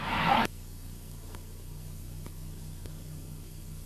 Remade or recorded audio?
remade